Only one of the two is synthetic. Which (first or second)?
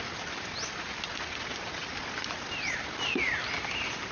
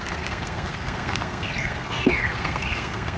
second